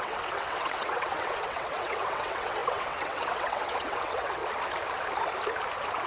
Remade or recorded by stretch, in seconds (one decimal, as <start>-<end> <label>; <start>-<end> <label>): 0.0-4.4 remade; 4.4-6.1 recorded